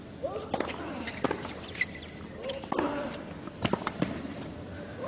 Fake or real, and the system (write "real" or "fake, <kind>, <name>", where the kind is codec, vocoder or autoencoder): real